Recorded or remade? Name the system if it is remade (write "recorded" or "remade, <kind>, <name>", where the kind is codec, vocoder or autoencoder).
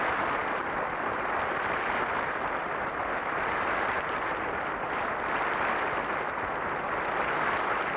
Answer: recorded